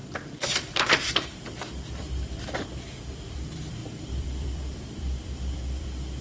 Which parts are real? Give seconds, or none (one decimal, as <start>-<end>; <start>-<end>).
0.0-3.2